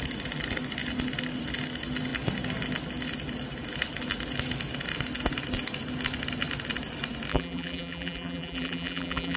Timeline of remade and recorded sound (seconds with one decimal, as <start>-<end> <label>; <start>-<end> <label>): 0.0-7.3 recorded; 7.3-9.4 remade